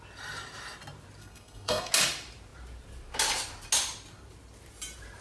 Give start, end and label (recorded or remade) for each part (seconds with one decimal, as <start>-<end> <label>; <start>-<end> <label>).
0.0-1.2 recorded; 1.2-1.9 remade; 1.9-5.2 recorded